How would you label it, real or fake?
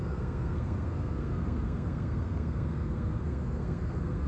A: fake